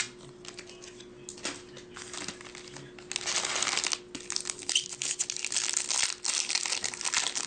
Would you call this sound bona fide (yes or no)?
yes